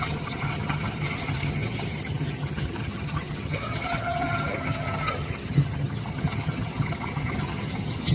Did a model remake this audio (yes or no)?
yes